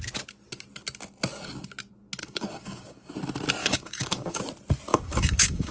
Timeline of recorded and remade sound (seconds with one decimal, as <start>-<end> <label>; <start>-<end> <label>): 0.0-2.2 recorded; 2.2-3.1 remade; 3.1-3.6 recorded; 3.6-4.4 remade; 4.4-4.9 recorded; 4.9-5.7 remade